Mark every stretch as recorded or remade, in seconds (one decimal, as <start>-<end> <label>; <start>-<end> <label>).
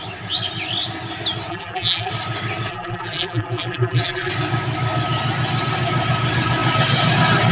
0.0-1.5 recorded; 1.5-2.1 remade; 2.1-2.7 recorded; 2.7-4.3 remade; 4.3-7.5 recorded